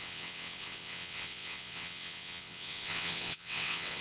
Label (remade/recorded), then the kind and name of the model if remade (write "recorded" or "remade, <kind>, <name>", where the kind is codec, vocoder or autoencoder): remade, vocoder, WaveNeXt